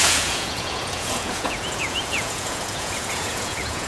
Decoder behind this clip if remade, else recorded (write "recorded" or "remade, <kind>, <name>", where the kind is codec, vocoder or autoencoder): remade, vocoder, Vocos